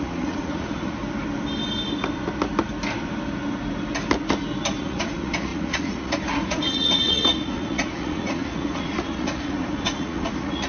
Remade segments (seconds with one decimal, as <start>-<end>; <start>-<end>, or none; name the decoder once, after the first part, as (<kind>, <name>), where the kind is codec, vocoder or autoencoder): 0.0-1.0 (vocoder, Vocos); 4.8-10.7